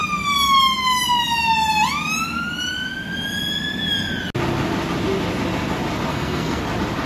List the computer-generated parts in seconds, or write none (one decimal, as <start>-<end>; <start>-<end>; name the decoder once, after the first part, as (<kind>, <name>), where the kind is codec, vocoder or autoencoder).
6.1-6.6 (codec, SNAC)